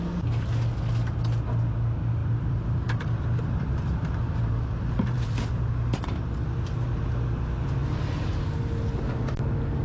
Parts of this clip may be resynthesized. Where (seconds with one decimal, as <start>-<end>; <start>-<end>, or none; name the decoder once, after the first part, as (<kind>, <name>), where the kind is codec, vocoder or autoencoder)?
2.2-5.7 (vocoder, BigVGAN v2)